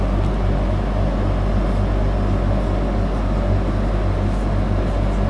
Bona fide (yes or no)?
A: yes